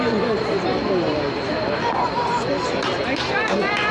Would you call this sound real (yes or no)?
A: yes